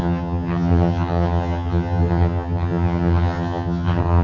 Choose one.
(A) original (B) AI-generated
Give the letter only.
B